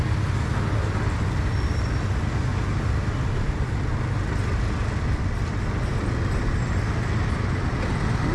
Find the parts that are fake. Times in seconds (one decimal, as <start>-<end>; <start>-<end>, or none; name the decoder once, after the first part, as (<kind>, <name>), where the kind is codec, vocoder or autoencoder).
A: none